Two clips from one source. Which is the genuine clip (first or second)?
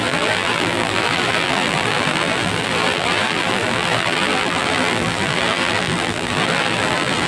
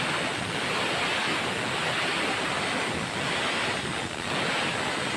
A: second